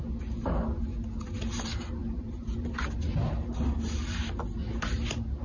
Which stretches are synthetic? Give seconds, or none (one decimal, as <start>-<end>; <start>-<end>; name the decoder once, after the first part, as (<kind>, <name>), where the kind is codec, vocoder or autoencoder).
none